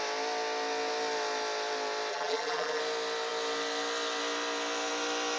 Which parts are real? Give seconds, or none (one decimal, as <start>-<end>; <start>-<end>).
0.0-2.1; 2.8-5.4